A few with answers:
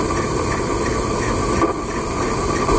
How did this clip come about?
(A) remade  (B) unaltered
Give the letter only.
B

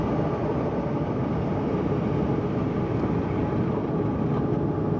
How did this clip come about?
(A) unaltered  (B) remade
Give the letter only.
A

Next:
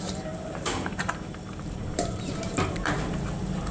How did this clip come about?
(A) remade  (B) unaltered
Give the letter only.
A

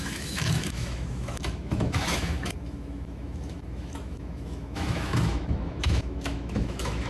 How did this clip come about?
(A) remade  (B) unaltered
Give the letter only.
A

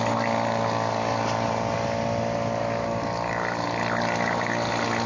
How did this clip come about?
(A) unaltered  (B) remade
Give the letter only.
A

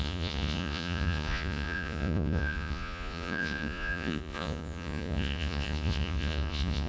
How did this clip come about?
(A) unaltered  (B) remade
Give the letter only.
B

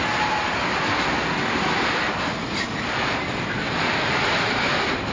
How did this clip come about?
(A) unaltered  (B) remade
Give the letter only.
A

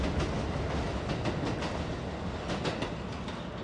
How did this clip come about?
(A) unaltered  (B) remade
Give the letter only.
A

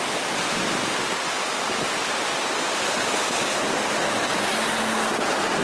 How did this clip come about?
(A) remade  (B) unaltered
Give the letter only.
B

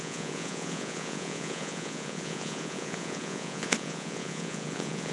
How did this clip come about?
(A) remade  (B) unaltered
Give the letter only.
A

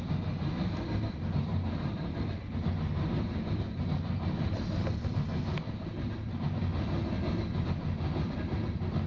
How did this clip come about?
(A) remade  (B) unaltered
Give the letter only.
B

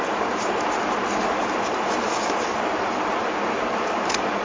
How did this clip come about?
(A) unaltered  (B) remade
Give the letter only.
A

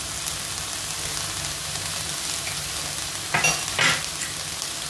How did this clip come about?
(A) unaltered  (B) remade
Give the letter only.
A